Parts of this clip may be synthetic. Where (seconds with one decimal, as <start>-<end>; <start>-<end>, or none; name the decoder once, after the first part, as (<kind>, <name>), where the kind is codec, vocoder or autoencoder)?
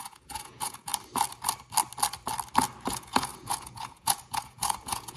0.0-0.9 (vocoder, Vocos); 2.9-5.2